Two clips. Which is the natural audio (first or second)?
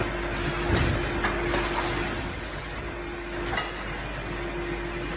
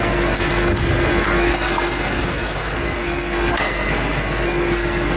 first